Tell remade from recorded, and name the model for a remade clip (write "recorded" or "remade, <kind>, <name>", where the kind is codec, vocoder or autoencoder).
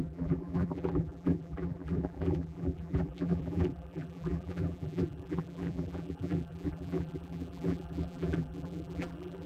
remade, vocoder, BigVGAN v2